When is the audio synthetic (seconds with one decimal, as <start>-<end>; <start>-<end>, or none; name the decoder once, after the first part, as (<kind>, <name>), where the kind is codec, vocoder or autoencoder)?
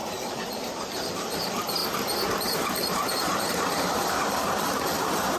0.5-1.8 (vocoder, BigVGAN v2); 2.4-5.4